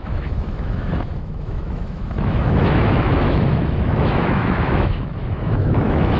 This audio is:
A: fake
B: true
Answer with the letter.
A